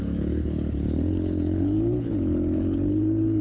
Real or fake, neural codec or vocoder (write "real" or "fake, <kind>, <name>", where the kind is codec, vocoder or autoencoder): fake, codec, HILCodec